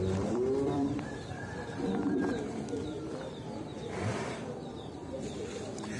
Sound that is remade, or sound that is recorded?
remade